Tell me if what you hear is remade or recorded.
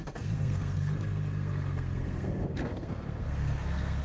remade